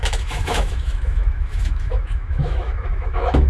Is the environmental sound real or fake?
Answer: fake